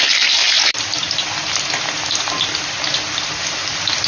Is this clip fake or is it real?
real